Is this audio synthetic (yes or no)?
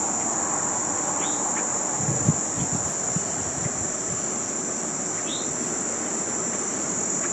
no